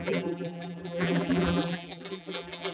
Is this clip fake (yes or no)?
yes